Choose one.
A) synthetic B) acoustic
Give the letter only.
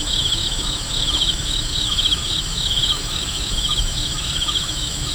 A